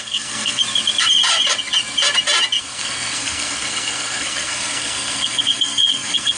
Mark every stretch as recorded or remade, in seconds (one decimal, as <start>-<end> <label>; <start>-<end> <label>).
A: 0.0-0.6 remade; 0.6-2.6 recorded; 2.6-6.4 remade